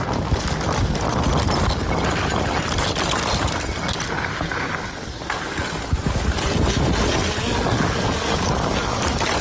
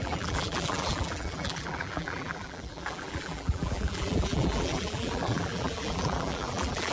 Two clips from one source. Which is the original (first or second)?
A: first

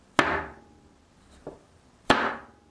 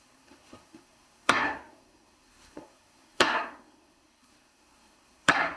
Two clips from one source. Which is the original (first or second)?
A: first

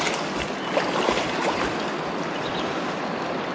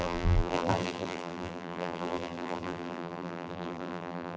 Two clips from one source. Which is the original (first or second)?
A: first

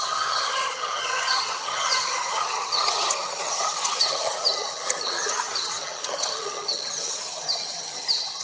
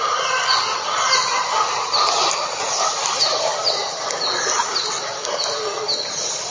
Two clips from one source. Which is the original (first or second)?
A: second